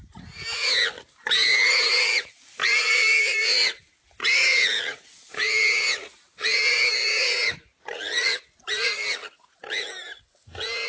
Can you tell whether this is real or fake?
real